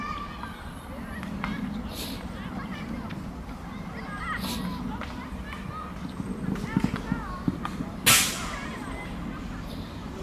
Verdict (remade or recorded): recorded